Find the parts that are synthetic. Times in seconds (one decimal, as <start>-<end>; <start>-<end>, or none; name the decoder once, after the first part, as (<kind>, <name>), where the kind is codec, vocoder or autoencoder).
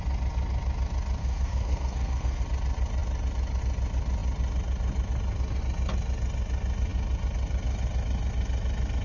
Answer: 1.2-2.4 (codec, SNAC)